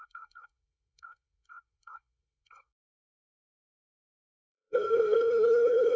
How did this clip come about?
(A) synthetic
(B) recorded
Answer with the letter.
A